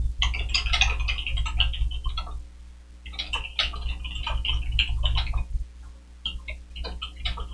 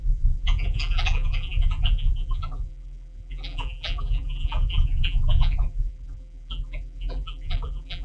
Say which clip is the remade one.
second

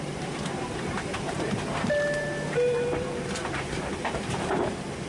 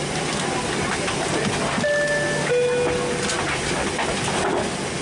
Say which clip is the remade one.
first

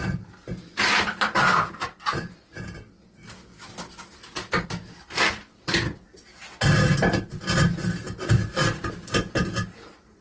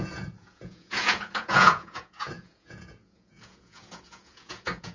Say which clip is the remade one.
second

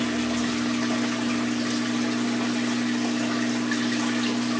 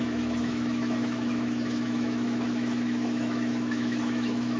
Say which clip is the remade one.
second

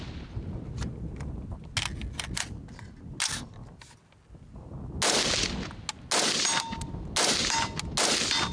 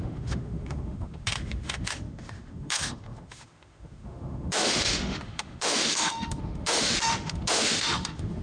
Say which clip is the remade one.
second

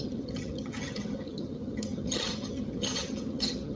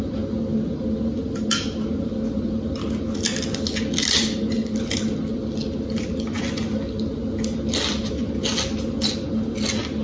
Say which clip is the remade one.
first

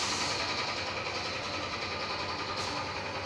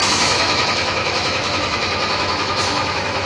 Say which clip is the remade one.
second